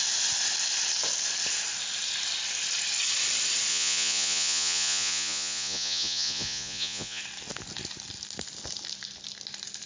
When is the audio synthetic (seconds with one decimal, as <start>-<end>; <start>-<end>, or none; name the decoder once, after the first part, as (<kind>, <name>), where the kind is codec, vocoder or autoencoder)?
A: 3.7-7.2 (vocoder, Vocos)